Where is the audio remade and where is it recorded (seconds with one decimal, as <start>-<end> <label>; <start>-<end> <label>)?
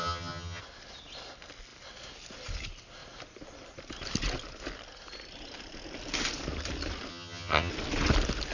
0.0-0.6 remade; 0.6-7.1 recorded; 7.1-7.7 remade; 7.7-8.5 recorded